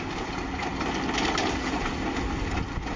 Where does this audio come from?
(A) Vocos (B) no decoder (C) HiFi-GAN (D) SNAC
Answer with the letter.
B